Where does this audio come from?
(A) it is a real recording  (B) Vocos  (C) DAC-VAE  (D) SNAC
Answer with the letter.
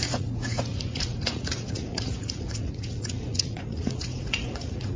B